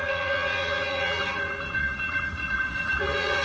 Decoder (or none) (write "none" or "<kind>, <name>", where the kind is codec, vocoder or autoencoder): vocoder, Vocos